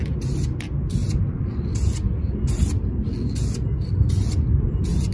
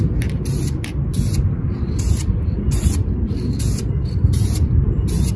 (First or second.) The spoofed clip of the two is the second